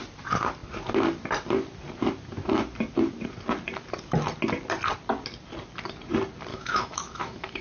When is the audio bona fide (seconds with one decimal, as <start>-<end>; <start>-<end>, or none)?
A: 0.0-6.5